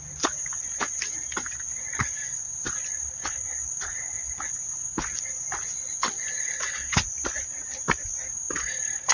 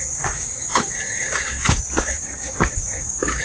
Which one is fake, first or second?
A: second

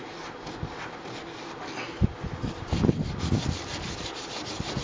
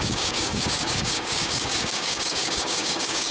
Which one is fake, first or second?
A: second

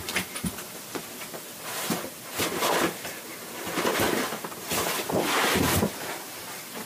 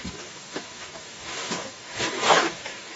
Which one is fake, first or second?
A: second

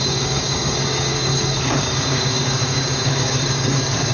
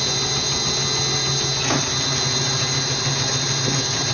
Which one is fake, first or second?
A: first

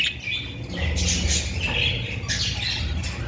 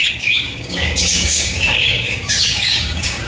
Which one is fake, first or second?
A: second